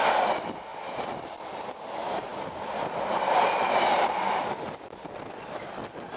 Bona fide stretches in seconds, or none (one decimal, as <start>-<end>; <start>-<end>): 0.0-6.2